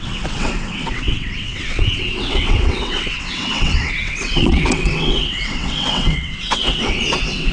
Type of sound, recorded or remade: remade